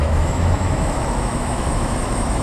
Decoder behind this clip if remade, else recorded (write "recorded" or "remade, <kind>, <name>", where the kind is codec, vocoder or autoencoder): remade, autoencoder, DAC-VAE